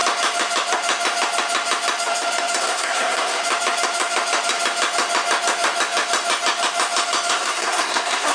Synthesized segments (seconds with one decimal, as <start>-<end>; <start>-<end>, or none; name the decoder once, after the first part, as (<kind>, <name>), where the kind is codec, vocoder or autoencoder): 2.6-3.4 (codec, SNAC); 7.3-8.3